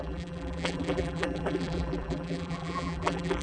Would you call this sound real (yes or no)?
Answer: no